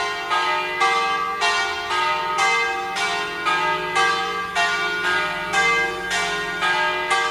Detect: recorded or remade recorded